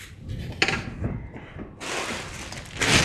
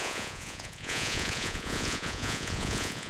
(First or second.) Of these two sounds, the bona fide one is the first